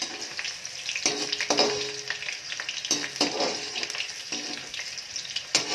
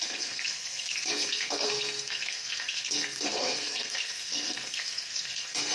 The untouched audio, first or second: first